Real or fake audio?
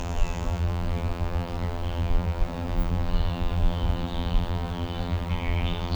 fake